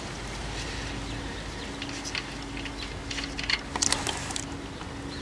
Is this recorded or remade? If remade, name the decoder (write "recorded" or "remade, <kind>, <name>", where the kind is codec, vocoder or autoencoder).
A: recorded